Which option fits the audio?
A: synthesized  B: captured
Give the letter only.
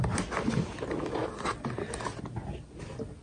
B